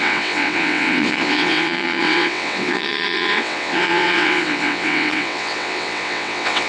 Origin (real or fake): fake